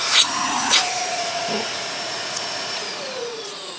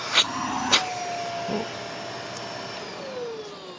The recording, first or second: second